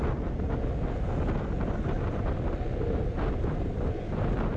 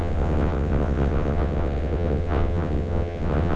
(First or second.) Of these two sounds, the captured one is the first